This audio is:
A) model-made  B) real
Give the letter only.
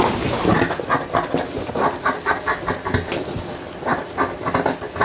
B